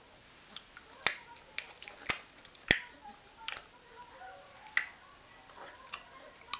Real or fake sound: real